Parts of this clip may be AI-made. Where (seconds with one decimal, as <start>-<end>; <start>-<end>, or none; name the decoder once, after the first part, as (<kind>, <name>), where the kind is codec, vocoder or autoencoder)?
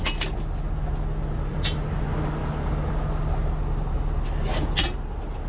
none